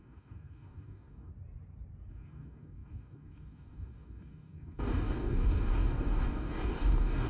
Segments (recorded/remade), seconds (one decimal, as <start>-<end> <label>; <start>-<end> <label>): 0.0-1.3 remade; 1.3-2.1 recorded; 2.1-7.3 remade